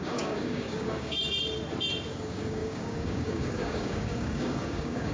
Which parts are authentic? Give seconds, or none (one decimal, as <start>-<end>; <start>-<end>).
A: 1.2-2.1